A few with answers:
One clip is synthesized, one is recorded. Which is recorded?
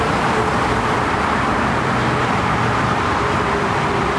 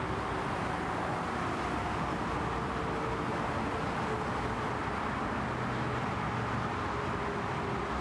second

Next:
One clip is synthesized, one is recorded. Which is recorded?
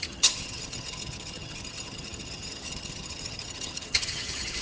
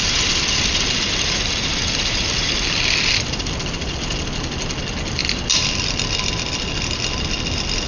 second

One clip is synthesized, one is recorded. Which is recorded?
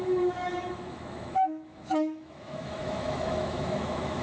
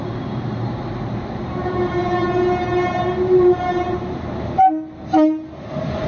second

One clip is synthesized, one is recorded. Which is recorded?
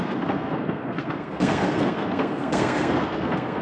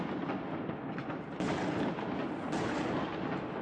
second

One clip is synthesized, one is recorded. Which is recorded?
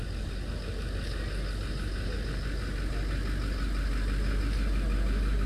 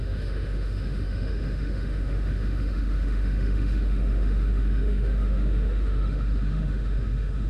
first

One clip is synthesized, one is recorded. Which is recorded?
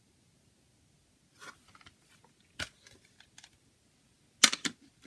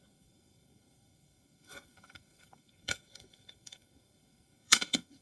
first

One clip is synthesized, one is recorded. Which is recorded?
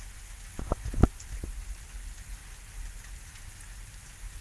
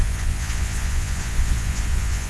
first